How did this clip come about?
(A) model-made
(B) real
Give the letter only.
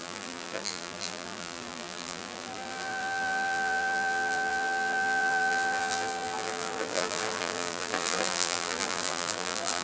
A